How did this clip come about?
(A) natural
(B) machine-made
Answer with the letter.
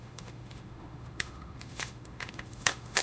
B